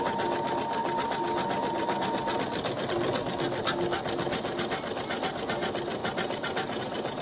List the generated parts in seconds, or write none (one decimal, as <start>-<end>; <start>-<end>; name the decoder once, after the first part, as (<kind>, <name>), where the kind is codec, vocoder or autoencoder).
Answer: none